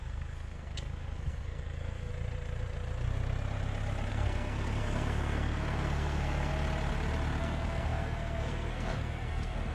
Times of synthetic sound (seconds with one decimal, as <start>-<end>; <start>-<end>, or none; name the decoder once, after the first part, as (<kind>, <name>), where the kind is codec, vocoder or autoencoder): 0.0-2.1 (codec, SNAC); 4.1-6.5; 7.4-9.7